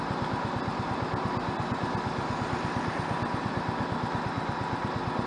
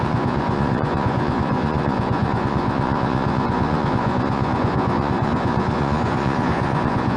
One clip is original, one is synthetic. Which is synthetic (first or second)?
second